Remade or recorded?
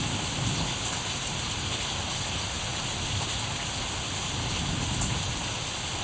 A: recorded